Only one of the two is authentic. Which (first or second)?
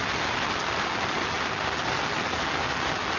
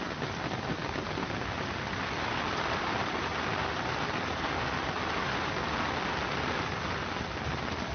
first